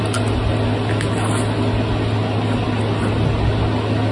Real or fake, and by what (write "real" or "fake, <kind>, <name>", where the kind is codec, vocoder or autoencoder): real